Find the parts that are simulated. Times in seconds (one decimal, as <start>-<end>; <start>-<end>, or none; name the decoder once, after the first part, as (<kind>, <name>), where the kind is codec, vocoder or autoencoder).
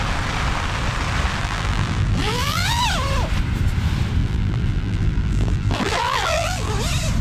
1.4-2.8 (vocoder, BigVGAN v2); 4.2-6.7